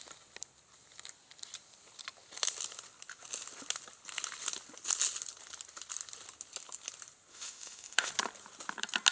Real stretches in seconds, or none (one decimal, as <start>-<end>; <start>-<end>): 0.0-7.3; 8.1-9.1

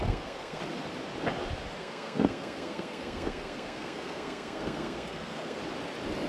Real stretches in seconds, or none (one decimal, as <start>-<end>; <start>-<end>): 0.6-1.8; 5.6-6.3

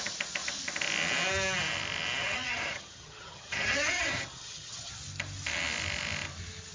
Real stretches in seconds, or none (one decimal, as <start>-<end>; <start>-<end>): 0.0-2.2; 4.9-6.7

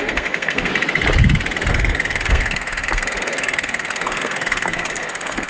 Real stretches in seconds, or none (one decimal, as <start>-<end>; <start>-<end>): 0.7-1.7

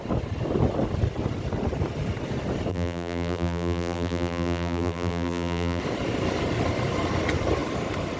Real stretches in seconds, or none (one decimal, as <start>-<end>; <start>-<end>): 0.0-2.7; 5.8-8.2

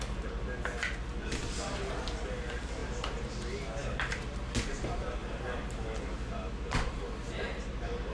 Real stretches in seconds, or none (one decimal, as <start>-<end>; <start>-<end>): 0.0-1.4; 2.1-3.8; 4.4-5.2; 5.8-8.1

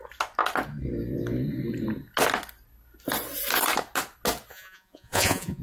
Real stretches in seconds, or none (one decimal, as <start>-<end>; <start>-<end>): 0.0-4.5